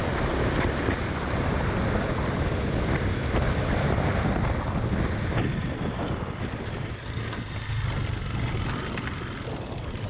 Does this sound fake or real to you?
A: real